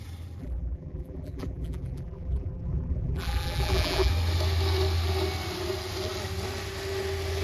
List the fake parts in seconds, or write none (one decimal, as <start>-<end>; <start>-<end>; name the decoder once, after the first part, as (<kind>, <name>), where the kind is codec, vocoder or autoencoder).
0.4-4.1 (vocoder, BigVGAN v2)